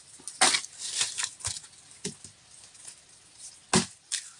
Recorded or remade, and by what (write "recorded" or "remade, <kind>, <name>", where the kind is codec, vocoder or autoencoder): recorded